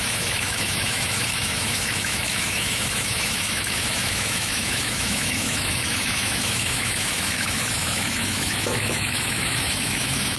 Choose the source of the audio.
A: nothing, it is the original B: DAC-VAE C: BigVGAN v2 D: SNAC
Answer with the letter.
B